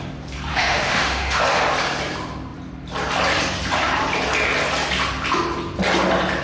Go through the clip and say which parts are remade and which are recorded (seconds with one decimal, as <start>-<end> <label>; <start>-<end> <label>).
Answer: 0.0-0.5 recorded; 0.5-1.4 remade; 1.4-6.4 recorded